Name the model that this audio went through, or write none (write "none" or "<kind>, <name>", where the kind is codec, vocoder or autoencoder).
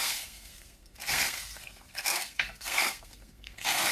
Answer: codec, SNAC